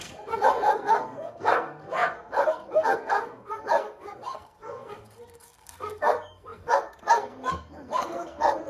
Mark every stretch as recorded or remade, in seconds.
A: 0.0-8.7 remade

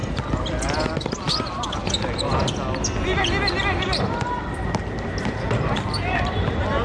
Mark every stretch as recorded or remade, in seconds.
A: 0.0-6.8 recorded

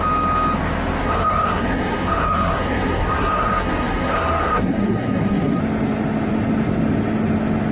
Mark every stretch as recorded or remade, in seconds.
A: 0.0-1.0 recorded; 1.0-5.6 remade; 5.6-7.7 recorded

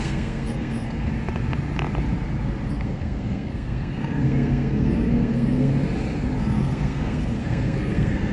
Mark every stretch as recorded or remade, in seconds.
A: 0.0-1.1 remade; 1.1-2.7 recorded; 2.7-5.7 remade; 5.7-6.4 recorded; 6.4-8.3 remade

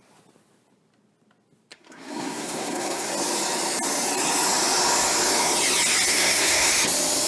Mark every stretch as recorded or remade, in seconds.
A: 0.0-1.7 recorded; 1.7-3.1 remade; 3.1-6.1 recorded; 6.1-6.7 remade; 6.7-7.3 recorded